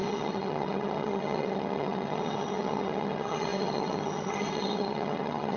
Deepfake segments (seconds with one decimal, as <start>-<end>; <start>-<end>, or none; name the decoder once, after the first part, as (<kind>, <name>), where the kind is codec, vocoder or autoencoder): 0.0-5.6 (vocoder, HiFi-GAN)